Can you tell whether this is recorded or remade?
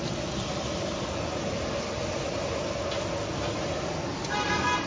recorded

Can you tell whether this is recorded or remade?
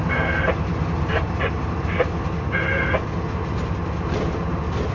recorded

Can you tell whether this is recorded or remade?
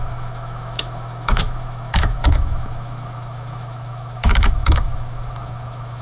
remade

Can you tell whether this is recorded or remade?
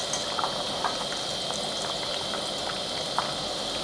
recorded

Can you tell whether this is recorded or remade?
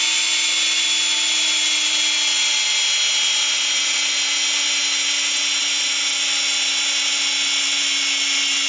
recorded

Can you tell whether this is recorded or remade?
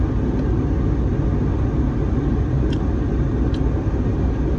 recorded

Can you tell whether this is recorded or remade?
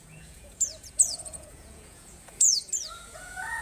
remade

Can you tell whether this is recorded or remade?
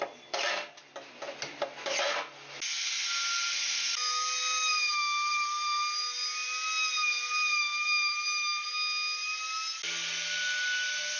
recorded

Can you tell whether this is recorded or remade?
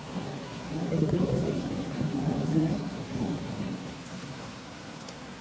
remade